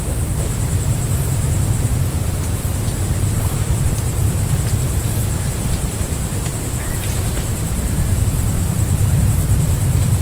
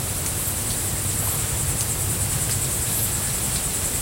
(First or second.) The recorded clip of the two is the second